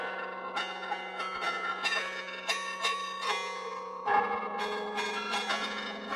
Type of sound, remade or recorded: remade